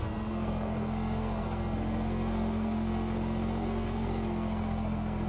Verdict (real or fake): fake